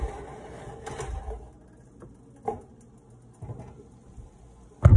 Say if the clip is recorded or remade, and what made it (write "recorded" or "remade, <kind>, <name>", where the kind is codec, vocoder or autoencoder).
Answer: recorded